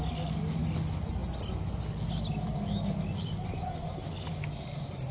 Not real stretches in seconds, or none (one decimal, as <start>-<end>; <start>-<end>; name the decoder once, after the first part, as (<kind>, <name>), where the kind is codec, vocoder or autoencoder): none